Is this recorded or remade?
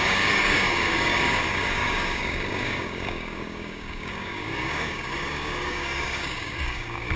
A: remade